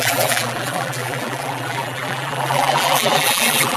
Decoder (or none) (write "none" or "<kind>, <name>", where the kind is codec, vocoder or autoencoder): vocoder, BigVGAN v2